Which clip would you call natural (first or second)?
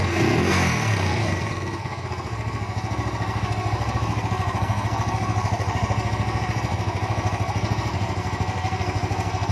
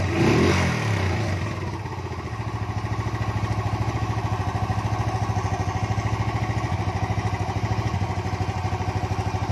second